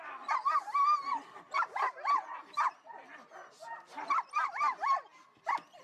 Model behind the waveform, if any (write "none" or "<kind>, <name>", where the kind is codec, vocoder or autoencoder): none